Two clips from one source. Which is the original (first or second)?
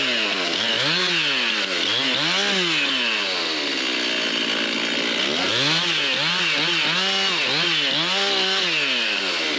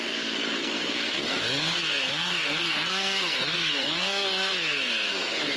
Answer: first